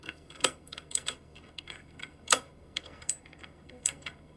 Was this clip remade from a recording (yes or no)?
yes